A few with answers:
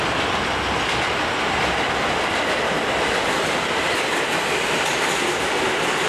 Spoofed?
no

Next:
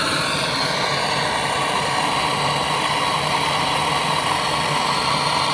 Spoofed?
no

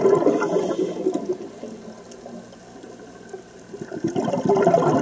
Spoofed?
no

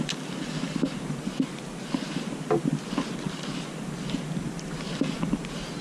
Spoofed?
no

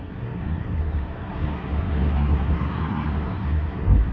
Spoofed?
yes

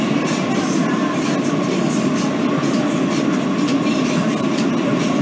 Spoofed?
no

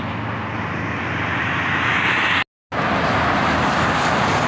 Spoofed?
no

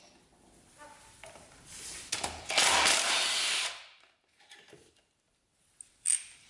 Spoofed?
no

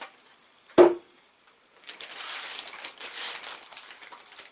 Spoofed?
no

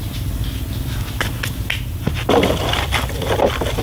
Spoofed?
no